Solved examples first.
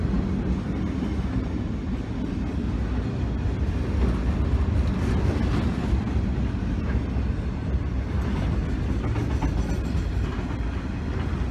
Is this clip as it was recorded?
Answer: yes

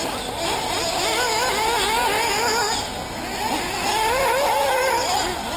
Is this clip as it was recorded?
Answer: yes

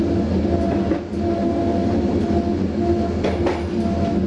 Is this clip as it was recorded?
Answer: yes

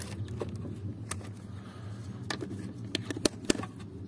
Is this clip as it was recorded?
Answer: yes